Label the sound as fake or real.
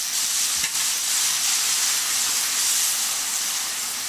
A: real